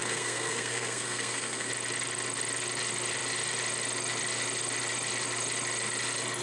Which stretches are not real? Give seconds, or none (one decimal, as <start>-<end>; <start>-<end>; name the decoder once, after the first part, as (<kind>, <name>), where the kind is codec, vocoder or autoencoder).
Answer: 0.0-1.7 (codec, SNAC)